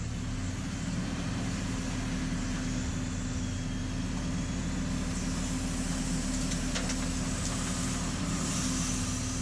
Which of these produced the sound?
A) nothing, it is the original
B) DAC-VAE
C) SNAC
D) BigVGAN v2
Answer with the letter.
A